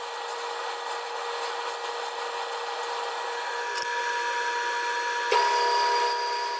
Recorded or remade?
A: recorded